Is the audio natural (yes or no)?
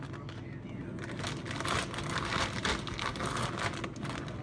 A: yes